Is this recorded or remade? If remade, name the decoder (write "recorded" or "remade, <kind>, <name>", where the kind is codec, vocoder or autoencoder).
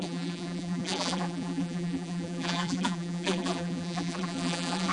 remade, vocoder, BigVGAN v2